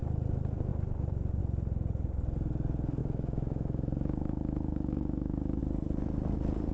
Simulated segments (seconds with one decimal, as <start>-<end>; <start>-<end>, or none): 3.0-5.6